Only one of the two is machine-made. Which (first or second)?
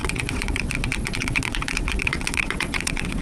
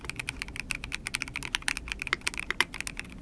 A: first